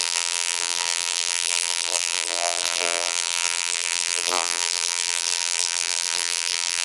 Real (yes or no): no